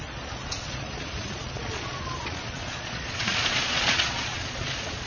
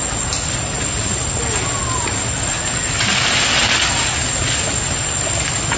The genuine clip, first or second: second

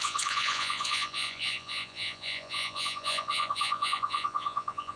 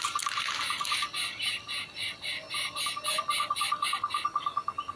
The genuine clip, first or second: second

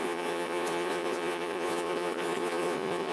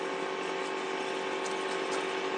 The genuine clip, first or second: second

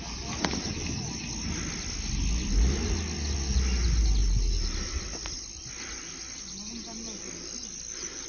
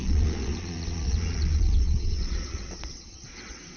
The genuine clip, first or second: first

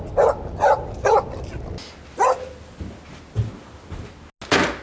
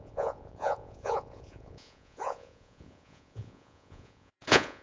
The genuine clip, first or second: first